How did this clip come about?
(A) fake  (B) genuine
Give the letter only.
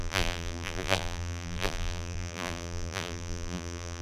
A